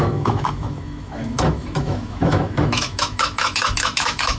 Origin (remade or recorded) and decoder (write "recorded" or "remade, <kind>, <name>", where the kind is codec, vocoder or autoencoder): remade, autoencoder, DAC-VAE